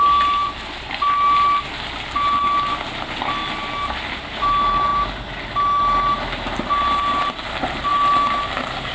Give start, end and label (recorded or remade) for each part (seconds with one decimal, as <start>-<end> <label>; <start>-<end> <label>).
0.0-8.9 recorded